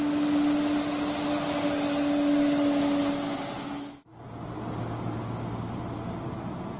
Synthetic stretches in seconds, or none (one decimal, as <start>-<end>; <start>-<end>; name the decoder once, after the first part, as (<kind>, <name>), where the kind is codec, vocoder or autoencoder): none